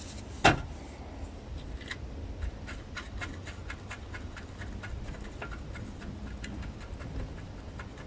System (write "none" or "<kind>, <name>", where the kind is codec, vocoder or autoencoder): none